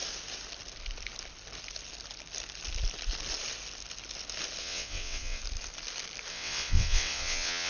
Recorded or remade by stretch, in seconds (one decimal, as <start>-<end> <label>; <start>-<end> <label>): 0.0-4.6 recorded; 4.6-5.4 remade; 5.4-6.3 recorded; 6.3-7.7 remade